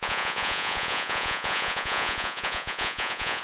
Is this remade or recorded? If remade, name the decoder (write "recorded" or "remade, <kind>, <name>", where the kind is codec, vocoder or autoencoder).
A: remade, vocoder, Vocos